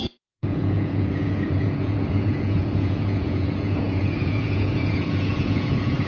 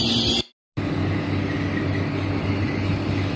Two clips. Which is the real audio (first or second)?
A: second